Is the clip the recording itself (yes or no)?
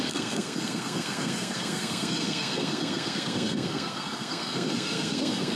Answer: no